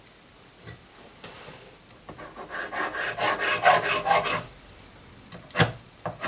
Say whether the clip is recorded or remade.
recorded